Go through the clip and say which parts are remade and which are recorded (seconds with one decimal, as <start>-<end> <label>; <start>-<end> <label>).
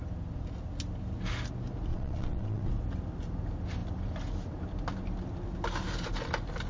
0.0-1.9 recorded; 1.9-2.7 remade; 2.7-6.7 recorded